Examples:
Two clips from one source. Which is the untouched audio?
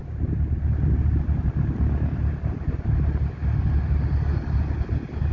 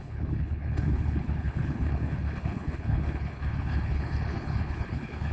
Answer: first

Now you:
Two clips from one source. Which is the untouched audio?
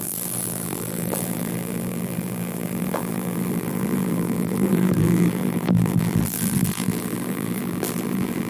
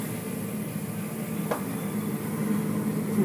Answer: second